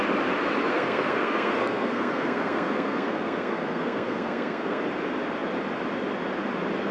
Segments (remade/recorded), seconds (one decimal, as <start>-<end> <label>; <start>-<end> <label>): 0.0-0.7 recorded; 0.7-4.8 remade; 4.8-6.9 recorded